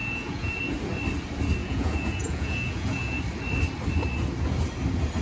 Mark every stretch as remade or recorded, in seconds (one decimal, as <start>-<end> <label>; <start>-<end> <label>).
0.0-0.6 remade; 0.6-1.6 recorded; 1.6-3.2 remade; 3.2-5.2 recorded